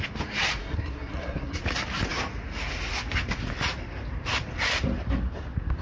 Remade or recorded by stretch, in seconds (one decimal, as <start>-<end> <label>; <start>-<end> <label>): 0.0-0.6 recorded; 0.6-1.6 remade; 1.6-5.8 recorded